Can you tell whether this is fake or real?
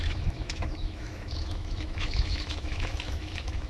fake